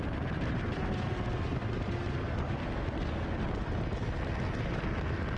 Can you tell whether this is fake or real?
real